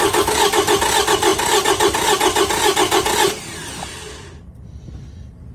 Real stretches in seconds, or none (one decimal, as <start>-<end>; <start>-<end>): 0.0-5.5